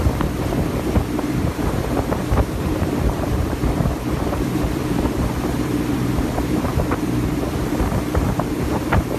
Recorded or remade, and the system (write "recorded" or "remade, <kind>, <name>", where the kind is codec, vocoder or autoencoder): remade, vocoder, BigVGAN v2